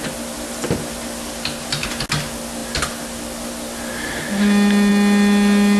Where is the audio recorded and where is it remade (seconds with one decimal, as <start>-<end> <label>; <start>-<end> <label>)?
0.0-5.8 recorded